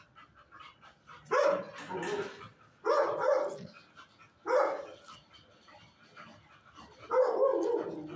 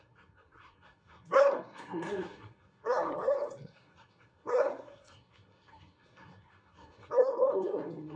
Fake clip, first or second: second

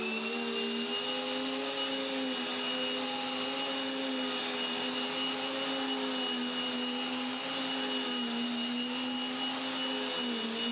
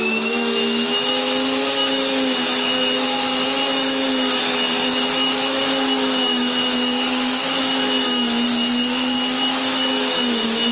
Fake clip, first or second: second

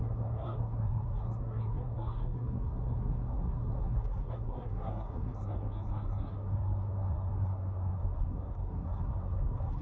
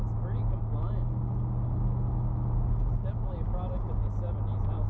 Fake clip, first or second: first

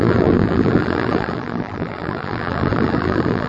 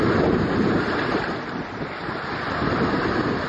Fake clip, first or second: first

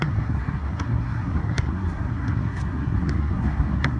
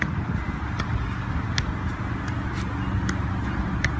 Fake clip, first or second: first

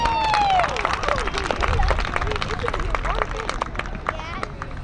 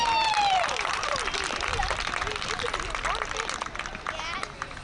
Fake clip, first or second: second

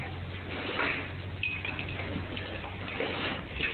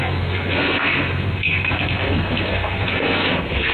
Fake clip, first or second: second